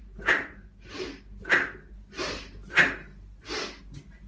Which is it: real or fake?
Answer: real